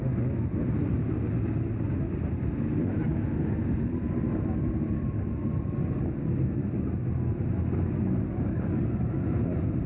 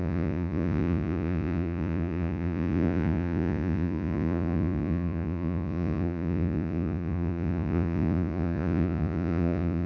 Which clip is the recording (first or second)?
first